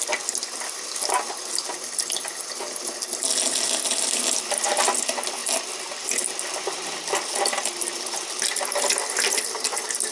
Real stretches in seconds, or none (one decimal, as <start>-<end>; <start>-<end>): 0.0-10.1